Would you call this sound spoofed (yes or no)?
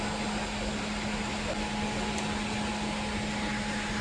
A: no